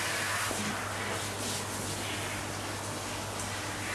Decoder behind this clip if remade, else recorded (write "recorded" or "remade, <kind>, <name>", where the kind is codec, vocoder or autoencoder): recorded